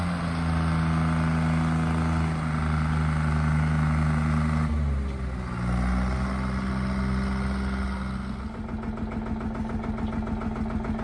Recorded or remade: recorded